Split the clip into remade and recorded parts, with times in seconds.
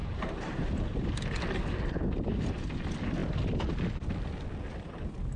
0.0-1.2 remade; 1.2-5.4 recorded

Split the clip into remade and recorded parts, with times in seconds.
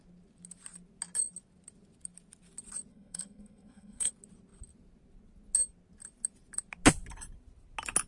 0.0-2.9 recorded; 2.9-4.1 remade; 4.1-8.1 recorded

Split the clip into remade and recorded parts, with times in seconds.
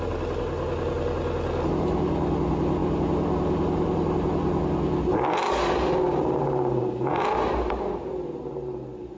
0.0-9.2 recorded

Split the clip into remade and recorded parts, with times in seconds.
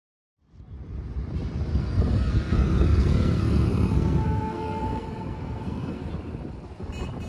0.0-1.7 recorded; 1.7-6.1 remade; 6.1-7.3 recorded